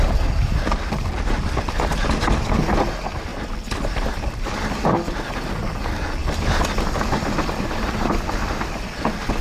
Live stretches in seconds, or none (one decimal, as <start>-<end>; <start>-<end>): 0.0-9.4